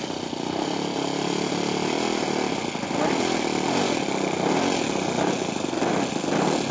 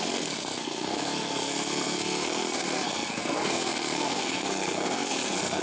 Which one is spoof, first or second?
second